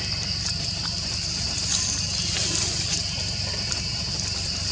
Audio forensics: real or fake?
real